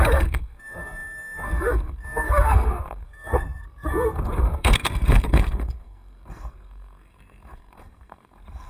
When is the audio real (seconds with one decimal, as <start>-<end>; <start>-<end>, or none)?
none